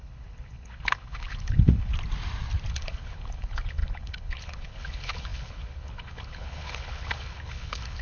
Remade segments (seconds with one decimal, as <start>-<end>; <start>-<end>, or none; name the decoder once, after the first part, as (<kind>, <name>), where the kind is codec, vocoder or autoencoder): 0.0-1.9 (codec, HILCodec); 2.7-8.0